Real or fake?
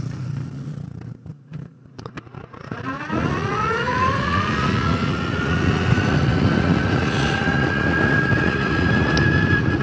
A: fake